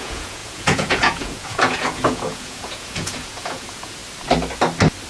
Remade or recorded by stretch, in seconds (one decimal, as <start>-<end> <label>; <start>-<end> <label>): 0.0-4.0 remade; 4.0-5.1 recorded